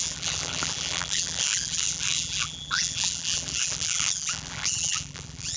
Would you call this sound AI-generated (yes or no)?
yes